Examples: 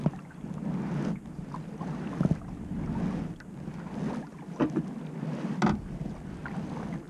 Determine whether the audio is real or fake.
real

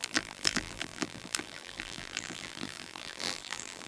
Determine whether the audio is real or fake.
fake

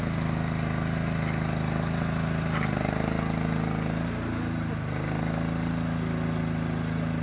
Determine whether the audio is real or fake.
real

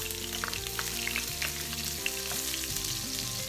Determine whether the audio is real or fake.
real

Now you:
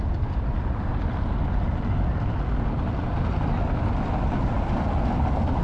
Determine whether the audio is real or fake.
real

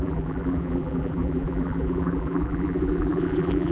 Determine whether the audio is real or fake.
fake